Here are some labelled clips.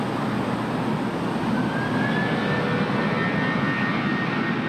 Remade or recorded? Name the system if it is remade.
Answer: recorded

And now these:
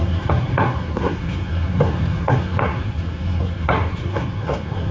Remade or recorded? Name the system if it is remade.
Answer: remade, codec, SNAC